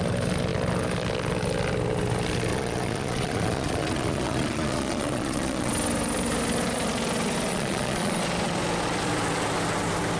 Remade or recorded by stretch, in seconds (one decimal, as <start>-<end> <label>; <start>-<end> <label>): 0.0-2.5 recorded; 2.5-5.7 remade; 5.7-7.5 recorded; 7.5-8.2 remade; 8.2-10.2 recorded